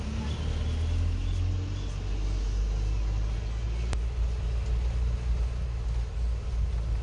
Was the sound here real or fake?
real